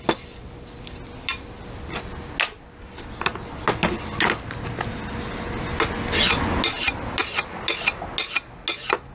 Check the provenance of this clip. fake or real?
real